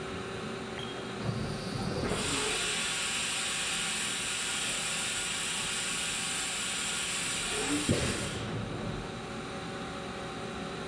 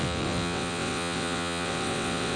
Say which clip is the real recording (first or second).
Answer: first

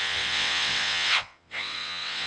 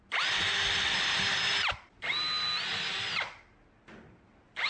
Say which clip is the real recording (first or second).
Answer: second